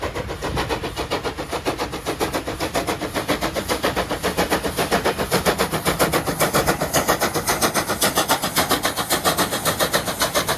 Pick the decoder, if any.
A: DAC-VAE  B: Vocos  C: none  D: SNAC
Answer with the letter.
C